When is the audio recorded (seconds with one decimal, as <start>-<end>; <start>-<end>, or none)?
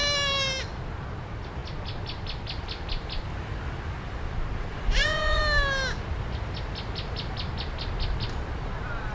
0.0-4.7; 5.4-9.1